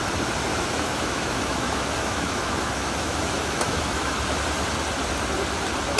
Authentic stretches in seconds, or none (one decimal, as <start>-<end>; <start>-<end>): 0.0-0.5; 4.1-6.0